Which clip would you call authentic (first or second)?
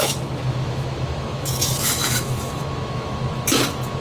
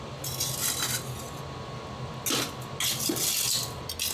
second